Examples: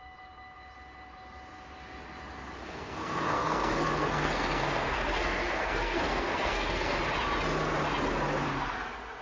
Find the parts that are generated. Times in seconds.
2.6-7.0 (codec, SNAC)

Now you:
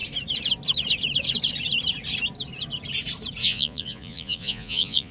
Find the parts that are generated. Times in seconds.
3.4-5.1 (vocoder, Vocos)

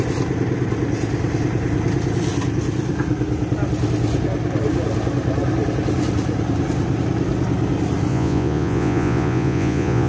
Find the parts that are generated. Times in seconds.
8.1-10.1 (vocoder, Vocos)

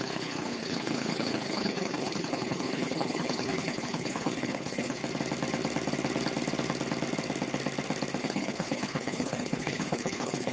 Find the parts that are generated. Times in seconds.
0.0-5.0 (codec, HILCodec); 8.2-10.5

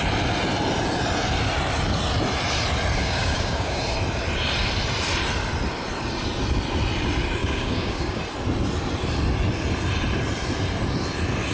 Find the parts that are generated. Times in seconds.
3.0-3.8 (codec, DAC); 7.4-8.2